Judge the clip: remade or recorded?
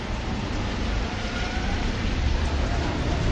recorded